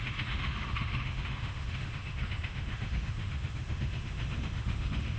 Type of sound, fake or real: fake